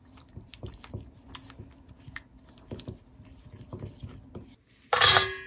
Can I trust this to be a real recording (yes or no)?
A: yes